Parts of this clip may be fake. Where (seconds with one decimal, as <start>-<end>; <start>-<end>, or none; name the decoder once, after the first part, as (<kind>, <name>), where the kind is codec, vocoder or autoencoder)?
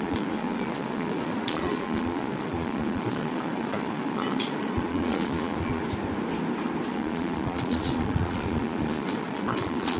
0.0-5.8 (vocoder, Vocos); 6.9-10.0